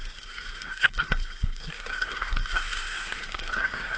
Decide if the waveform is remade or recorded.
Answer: remade